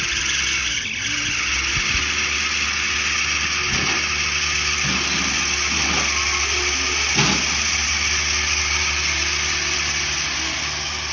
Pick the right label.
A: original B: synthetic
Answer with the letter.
A